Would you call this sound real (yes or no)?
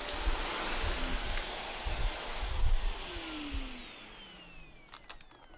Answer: yes